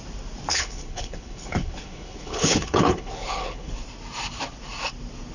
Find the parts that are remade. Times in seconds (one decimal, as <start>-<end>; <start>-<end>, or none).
0.5-3.7